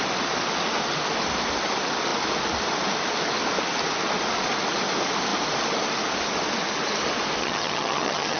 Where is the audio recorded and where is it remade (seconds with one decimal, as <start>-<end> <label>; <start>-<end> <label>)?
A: 0.0-7.4 recorded; 7.4-8.4 remade